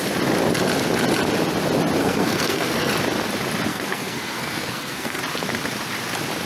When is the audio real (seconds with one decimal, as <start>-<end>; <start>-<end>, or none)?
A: 0.0-2.0; 2.9-3.7; 5.2-6.5